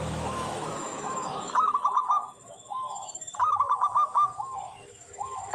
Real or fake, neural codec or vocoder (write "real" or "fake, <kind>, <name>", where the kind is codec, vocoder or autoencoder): fake, autoencoder, DAC-VAE